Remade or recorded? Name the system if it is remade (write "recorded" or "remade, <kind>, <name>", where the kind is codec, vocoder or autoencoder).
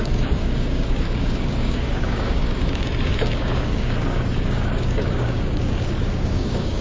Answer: remade, codec, DAC